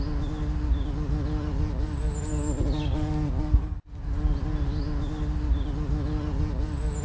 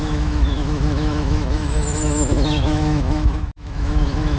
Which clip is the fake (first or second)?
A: second